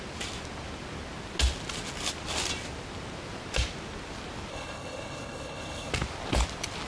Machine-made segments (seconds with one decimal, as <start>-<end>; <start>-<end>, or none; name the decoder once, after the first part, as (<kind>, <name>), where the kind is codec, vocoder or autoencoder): 4.5-5.9 (codec, HILCodec)